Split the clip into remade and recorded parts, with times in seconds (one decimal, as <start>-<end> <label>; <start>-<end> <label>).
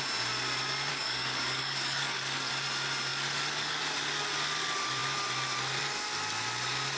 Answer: 0.0-0.9 recorded; 0.9-2.5 remade; 2.5-3.1 recorded; 3.1-3.8 remade; 3.8-7.0 recorded